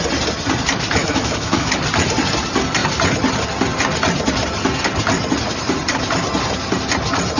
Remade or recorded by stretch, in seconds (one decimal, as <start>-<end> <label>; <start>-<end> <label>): 0.0-1.0 recorded; 1.0-1.7 remade; 1.7-7.4 recorded